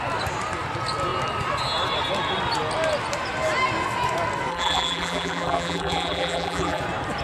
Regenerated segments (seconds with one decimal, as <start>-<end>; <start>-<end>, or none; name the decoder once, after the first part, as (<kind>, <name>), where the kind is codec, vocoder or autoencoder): 4.5-6.8 (vocoder, BigVGAN v2)